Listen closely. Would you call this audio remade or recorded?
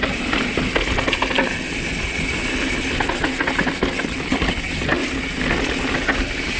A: recorded